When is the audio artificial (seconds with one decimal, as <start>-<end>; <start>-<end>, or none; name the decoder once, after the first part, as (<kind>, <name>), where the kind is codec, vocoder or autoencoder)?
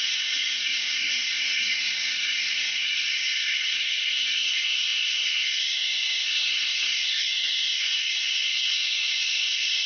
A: 0.0-9.9 (codec, SNAC)